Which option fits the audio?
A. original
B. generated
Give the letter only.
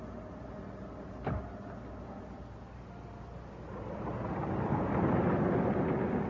A